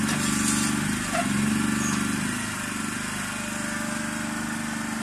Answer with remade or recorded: recorded